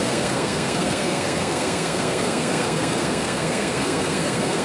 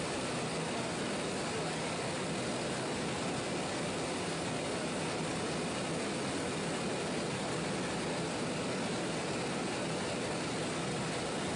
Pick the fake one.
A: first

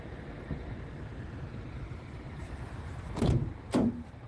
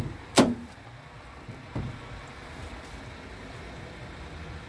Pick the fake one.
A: first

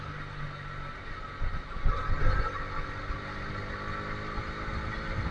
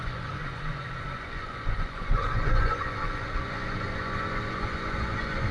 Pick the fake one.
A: second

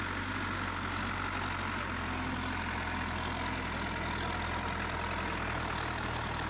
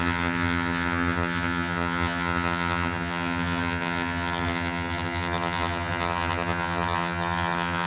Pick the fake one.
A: second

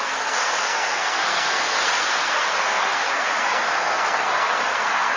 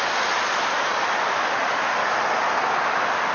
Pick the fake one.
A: first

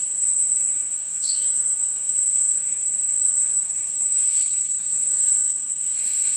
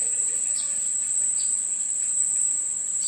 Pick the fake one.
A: first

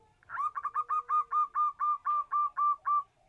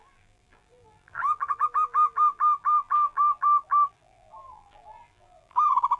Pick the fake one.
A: second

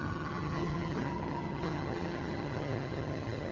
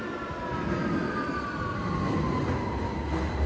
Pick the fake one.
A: first